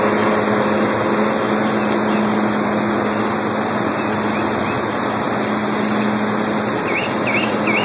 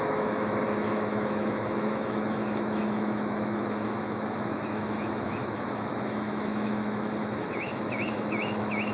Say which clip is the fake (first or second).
second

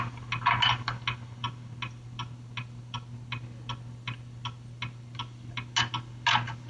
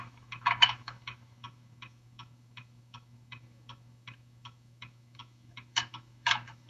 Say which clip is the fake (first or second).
second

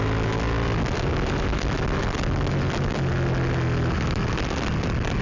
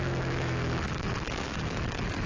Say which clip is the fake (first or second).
second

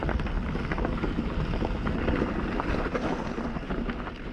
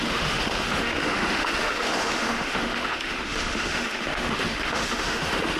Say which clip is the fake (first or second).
second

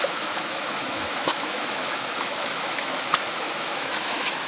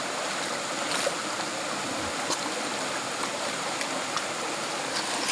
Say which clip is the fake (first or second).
first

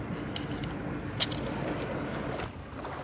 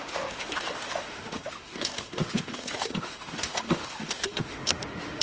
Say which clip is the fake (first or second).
second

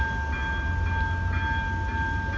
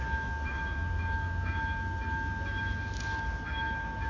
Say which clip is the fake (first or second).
second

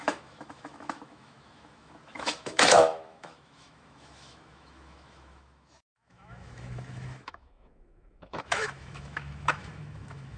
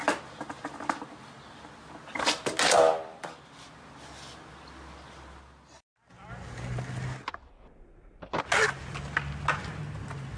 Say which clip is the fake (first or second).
first